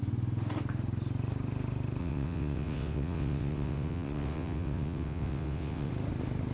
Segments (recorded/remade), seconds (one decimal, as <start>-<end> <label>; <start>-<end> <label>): 0.0-2.0 recorded; 2.0-5.9 remade; 5.9-6.5 recorded